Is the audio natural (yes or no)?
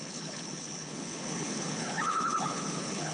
no